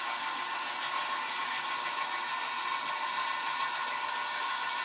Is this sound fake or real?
real